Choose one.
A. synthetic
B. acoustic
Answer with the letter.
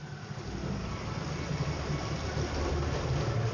B